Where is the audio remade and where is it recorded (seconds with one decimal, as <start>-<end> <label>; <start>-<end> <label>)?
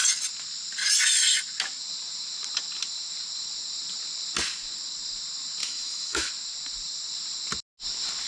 0.0-5.6 recorded; 5.6-6.3 remade; 6.3-8.3 recorded